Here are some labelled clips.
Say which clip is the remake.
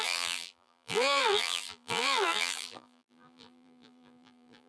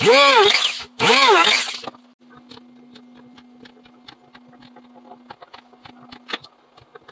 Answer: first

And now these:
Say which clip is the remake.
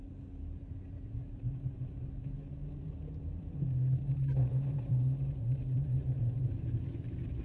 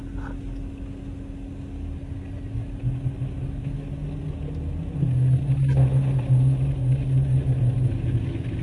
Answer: first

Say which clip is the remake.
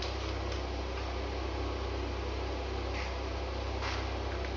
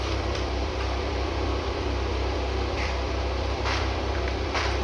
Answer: second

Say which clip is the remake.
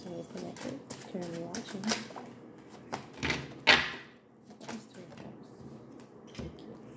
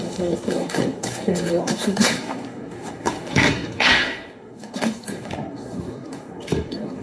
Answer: second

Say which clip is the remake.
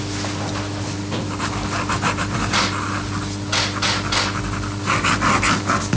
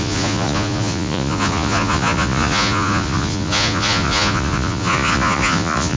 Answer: second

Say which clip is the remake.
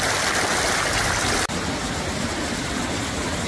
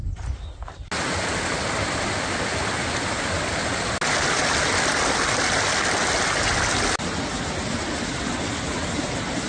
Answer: first